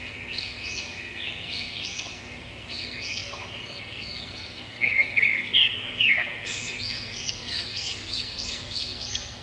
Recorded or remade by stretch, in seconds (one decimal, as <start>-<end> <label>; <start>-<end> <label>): 0.0-9.4 remade